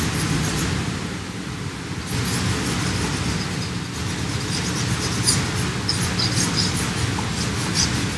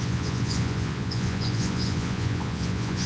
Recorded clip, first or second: first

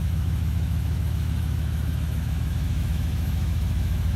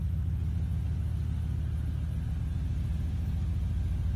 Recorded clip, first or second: second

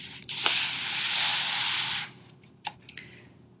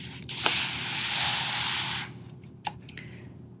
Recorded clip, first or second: second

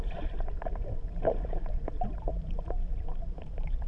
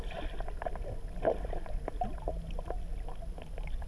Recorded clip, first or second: second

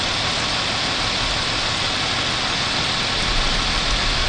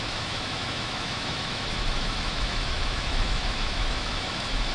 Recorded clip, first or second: first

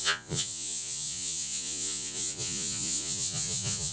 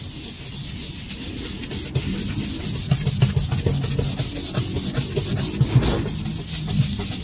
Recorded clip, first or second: second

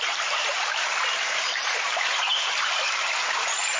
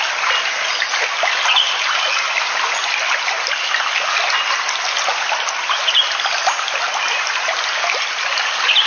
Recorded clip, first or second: second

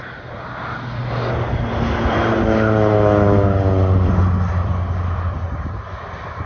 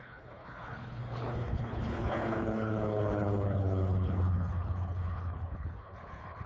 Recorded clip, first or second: first